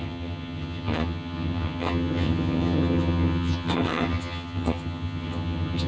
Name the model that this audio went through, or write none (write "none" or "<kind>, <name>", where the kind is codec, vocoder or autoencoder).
vocoder, HiFi-GAN